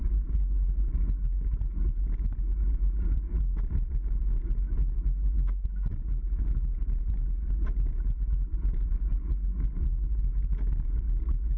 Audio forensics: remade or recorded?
recorded